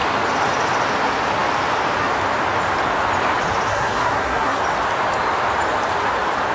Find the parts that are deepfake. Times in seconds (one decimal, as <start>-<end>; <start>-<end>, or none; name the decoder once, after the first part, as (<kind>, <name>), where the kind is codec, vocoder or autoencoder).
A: 3.7-4.6 (codec, SNAC)